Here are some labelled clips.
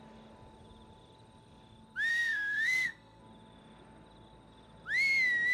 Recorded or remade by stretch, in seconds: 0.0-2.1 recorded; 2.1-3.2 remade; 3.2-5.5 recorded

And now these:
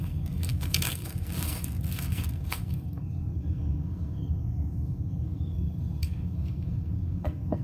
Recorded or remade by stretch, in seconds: 0.0-7.6 remade

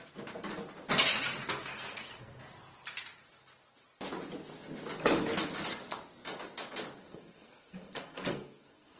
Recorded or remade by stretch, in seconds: 0.0-1.7 recorded; 1.7-2.4 remade; 2.4-7.0 recorded; 7.0-9.0 remade